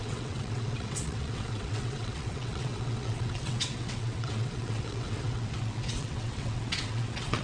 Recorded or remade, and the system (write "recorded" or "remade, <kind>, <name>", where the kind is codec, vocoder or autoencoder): remade, vocoder, WaveNeXt